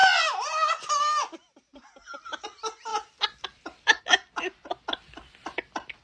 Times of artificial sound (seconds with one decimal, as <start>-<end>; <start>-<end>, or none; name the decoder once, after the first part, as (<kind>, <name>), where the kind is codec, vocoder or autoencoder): none